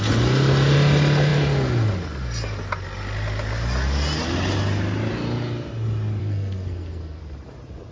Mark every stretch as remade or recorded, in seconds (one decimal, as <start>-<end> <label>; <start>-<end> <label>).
0.0-6.2 recorded; 6.2-7.2 remade; 7.2-7.9 recorded